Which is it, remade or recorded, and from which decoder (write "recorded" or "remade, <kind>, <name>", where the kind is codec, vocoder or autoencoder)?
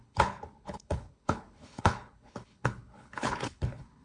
remade, codec, HILCodec